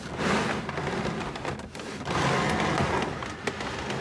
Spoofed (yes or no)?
no